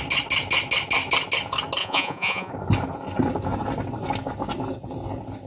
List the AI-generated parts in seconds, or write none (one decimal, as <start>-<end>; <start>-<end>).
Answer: 1.8-2.5